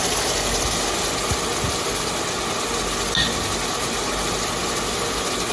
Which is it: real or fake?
real